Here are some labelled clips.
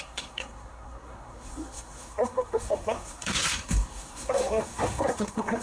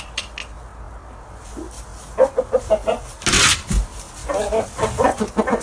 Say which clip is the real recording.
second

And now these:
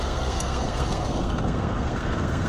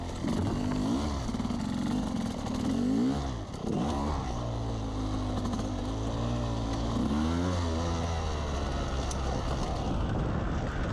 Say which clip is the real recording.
second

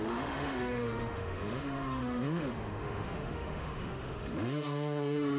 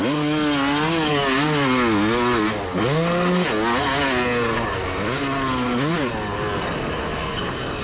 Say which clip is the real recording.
second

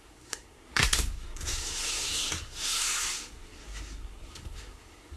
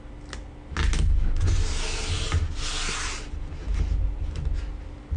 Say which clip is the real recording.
second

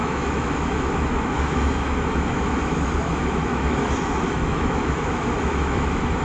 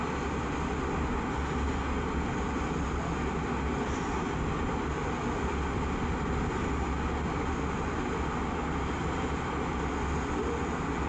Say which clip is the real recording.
second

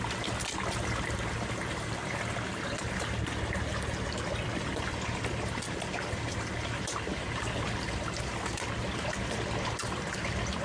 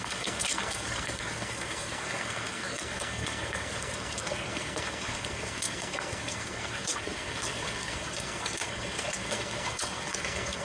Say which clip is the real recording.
first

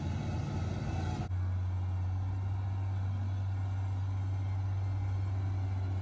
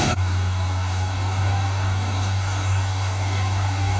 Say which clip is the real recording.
first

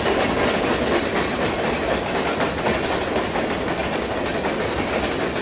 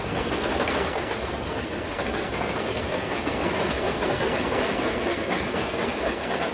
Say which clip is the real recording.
first